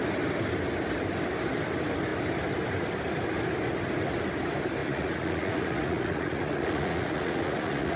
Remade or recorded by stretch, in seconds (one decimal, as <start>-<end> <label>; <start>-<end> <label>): 0.0-4.8 recorded; 4.8-8.0 remade

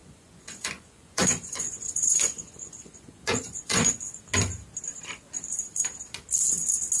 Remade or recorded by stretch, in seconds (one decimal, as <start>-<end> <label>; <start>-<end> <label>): 0.0-4.2 remade; 4.2-7.0 recorded

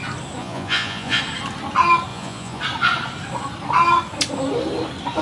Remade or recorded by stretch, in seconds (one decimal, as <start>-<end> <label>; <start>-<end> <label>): 0.0-0.4 recorded; 0.4-1.2 remade; 1.2-2.1 recorded; 2.1-2.6 remade; 2.6-5.2 recorded

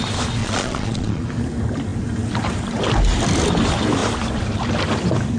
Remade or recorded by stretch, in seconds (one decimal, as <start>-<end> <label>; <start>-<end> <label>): 0.0-0.4 recorded; 0.4-1.2 remade; 1.2-5.4 recorded

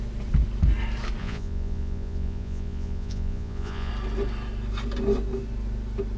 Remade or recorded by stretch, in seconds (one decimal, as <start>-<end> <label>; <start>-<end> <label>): 0.0-1.2 recorded; 1.2-3.9 remade; 3.9-6.2 recorded